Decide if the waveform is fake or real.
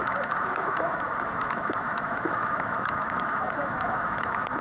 fake